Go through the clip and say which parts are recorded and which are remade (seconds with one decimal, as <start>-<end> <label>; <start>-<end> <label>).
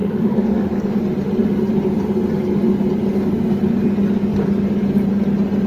0.0-1.0 remade; 1.0-5.7 recorded